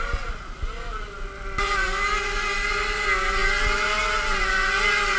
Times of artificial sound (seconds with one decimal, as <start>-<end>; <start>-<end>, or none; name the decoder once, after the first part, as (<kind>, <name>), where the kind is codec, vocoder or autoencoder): none